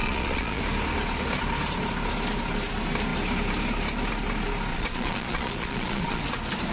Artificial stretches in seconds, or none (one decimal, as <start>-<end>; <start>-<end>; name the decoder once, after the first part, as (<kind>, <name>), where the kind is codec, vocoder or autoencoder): 0.0-0.6 (vocoder, Vocos); 4.7-6.2